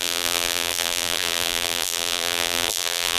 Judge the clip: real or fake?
fake